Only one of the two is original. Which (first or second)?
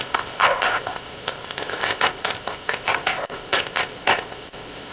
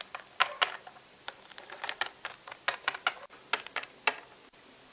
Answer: second